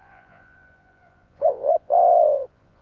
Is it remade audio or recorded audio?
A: remade